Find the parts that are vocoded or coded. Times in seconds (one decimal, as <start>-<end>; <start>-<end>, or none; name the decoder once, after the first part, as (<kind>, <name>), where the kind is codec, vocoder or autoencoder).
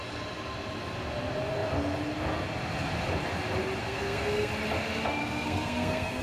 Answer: 3.8-4.5 (codec, SNAC); 5.2-6.2